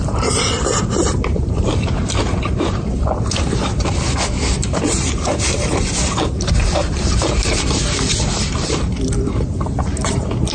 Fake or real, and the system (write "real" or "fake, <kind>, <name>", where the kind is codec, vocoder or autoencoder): fake, vocoder, BigVGAN v2